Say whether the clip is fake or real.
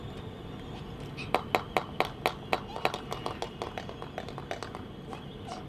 real